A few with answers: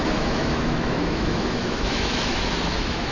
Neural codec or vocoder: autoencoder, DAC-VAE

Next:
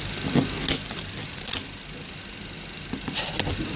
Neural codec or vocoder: none